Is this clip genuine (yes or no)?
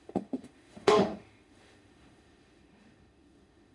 no